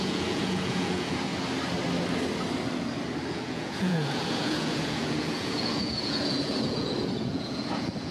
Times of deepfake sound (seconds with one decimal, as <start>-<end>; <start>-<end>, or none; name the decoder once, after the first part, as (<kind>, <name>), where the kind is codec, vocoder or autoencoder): 0.0-1.3 (vocoder, Vocos); 3.3-8.1